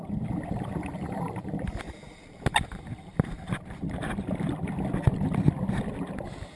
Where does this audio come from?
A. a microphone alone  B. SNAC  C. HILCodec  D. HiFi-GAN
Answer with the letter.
A